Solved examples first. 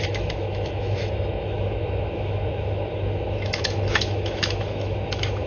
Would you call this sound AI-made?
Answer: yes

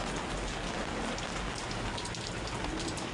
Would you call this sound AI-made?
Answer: no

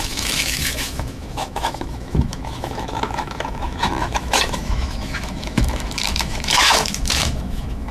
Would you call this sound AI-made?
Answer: yes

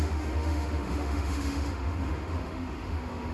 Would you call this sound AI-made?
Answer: yes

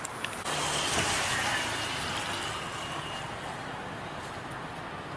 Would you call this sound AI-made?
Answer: no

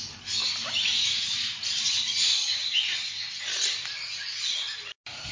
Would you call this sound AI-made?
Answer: no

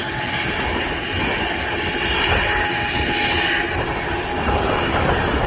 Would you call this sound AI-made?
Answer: no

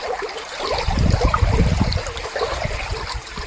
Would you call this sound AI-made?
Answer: no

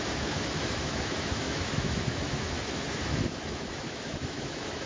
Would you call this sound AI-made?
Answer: yes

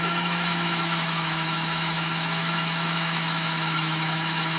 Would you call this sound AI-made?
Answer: yes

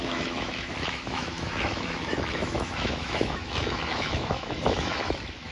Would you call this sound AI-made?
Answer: yes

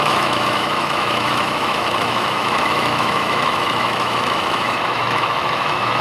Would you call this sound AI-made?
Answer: yes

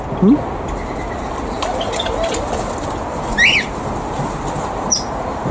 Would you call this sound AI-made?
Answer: no